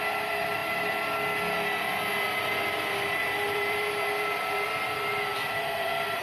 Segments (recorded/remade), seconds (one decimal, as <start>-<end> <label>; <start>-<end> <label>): 0.0-3.2 recorded; 3.2-4.7 remade; 4.7-5.3 recorded; 5.3-6.2 remade